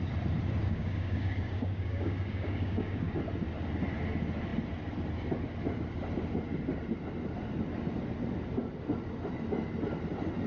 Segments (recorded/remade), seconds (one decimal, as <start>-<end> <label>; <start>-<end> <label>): 0.0-0.6 recorded; 0.6-3.2 remade; 3.2-10.5 recorded